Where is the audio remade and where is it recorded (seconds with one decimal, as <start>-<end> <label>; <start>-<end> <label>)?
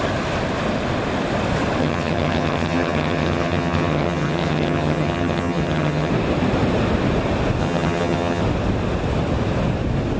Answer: 0.0-1.8 recorded; 1.8-6.1 remade; 6.1-7.6 recorded; 7.6-8.4 remade; 8.4-10.2 recorded